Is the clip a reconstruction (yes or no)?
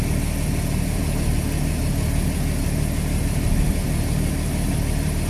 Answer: no